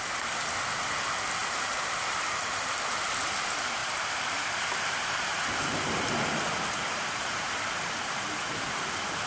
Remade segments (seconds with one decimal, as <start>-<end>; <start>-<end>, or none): 1.4-2.9; 3.8-8.9